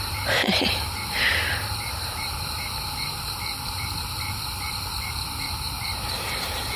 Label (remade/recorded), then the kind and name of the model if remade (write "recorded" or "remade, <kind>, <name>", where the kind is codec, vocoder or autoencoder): remade, vocoder, BigVGAN v2